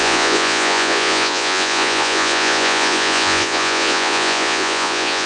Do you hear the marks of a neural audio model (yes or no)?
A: yes